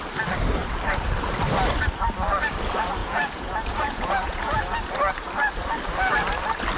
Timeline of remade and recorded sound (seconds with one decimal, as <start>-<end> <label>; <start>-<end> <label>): 0.0-3.0 recorded; 3.0-4.6 remade; 4.6-6.8 recorded